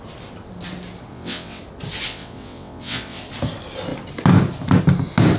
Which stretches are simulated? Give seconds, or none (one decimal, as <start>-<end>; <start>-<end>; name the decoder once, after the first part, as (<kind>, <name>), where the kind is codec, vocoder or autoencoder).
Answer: 1.1-1.6 (vocoder, WaveNeXt); 2.1-3.2